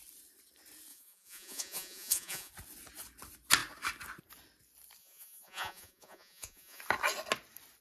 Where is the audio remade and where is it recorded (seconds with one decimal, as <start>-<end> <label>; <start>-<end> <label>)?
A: 0.0-0.9 recorded; 0.9-2.5 remade; 2.5-5.0 recorded; 5.0-6.8 remade; 6.8-7.8 recorded